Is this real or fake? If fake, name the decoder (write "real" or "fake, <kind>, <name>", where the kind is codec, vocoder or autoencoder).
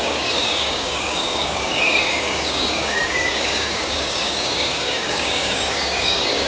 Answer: fake, codec, DAC